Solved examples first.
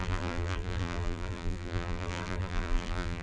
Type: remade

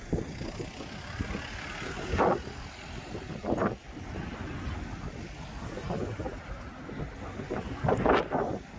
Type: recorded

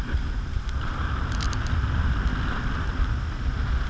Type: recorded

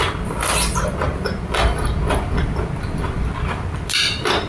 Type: recorded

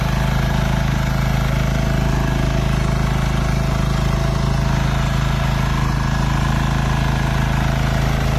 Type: recorded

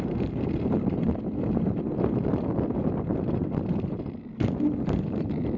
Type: recorded